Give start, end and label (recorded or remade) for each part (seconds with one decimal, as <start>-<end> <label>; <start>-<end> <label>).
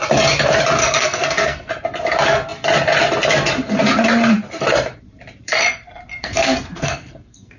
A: 0.0-0.8 recorded; 0.8-1.7 remade; 1.7-6.1 recorded; 6.1-7.6 remade